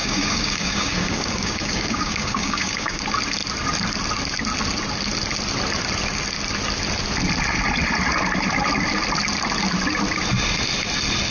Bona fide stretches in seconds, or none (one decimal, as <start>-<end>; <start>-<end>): 3.0-11.3